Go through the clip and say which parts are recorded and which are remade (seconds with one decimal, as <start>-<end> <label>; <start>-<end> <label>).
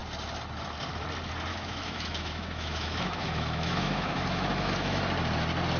0.0-1.5 recorded; 1.5-5.0 remade; 5.0-5.8 recorded